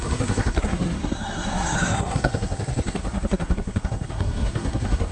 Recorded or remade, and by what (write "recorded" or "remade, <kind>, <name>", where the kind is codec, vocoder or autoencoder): remade, codec, SNAC